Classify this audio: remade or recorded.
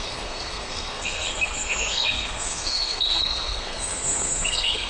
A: remade